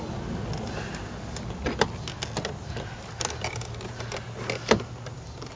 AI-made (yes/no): no